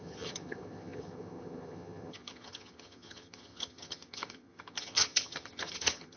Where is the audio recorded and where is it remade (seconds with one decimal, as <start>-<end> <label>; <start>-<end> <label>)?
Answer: 0.0-6.2 remade